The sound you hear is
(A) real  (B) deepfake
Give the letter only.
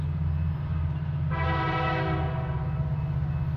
A